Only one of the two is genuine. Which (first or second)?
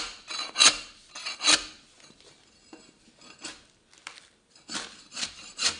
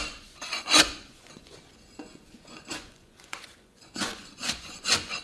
first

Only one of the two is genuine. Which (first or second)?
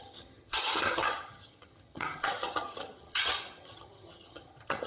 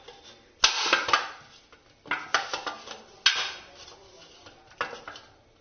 second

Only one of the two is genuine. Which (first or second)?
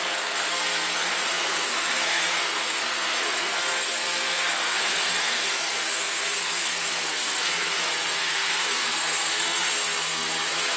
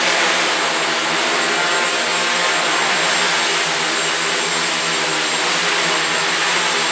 second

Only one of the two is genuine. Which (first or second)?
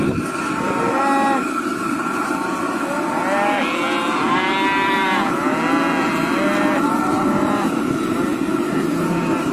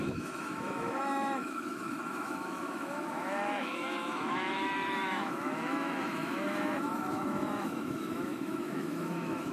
first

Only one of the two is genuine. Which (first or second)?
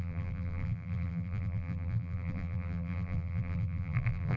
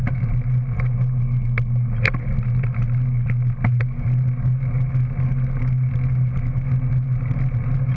second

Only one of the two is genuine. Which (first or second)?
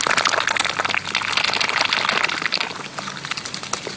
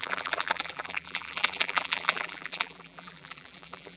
first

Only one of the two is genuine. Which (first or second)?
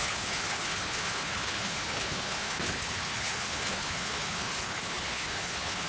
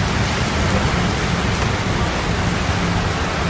second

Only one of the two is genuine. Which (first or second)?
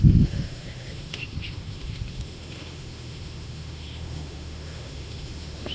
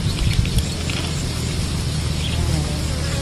second